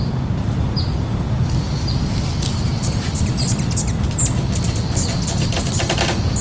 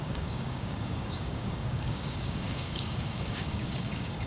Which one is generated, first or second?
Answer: second